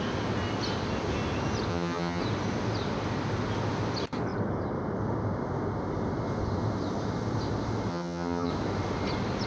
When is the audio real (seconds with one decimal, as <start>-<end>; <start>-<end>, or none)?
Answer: 0.0-1.7; 2.2-7.9; 8.5-9.5